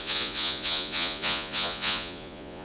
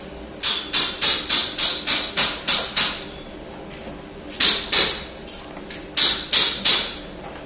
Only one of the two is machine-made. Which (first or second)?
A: first